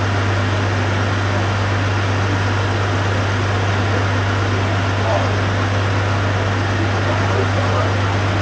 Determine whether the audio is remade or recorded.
recorded